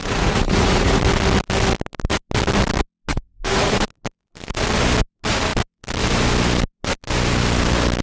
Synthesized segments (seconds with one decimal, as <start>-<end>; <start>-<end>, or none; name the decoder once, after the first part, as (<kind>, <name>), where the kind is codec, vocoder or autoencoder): 0.0-1.0 (vocoder, Vocos); 3.1-3.8